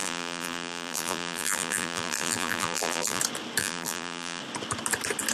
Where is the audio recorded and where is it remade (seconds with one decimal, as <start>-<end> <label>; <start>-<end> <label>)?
0.0-3.2 remade; 3.2-3.6 recorded; 3.6-4.4 remade; 4.4-5.3 recorded